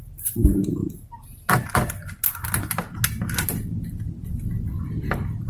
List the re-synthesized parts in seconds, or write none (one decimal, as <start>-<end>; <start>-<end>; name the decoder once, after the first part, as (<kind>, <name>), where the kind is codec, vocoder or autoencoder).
none